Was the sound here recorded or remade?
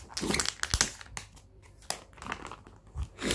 recorded